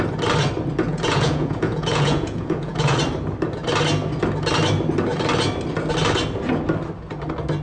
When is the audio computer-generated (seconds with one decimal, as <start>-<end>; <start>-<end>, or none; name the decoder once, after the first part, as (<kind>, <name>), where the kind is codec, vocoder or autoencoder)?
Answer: 0.9-3.0 (vocoder, Vocos)